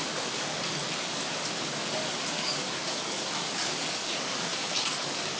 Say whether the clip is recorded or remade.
remade